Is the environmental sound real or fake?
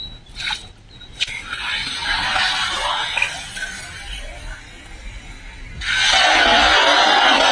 real